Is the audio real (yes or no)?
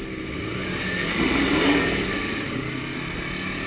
yes